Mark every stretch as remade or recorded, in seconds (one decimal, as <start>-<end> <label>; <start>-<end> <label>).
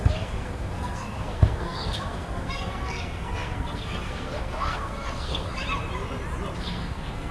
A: 0.0-5.6 remade; 5.6-6.6 recorded; 6.6-7.3 remade